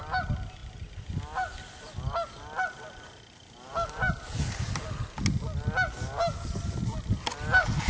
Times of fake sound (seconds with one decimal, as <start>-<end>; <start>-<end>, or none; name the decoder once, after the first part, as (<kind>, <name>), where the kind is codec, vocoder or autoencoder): none